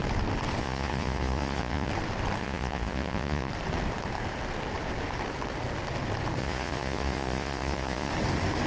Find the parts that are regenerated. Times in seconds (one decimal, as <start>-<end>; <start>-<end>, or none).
0.6-1.9; 2.4-3.5; 6.4-8.1